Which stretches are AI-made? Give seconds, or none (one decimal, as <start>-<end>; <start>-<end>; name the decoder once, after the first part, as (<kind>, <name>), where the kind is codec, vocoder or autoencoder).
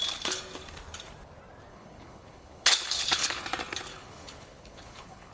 1.7-3.4 (codec, HILCodec); 3.9-5.3